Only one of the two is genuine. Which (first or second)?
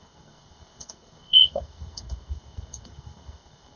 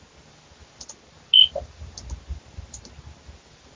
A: second